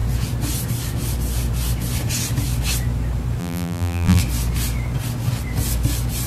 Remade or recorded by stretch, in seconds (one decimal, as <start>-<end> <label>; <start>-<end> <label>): 0.0-3.4 recorded; 3.4-4.2 remade; 4.2-6.3 recorded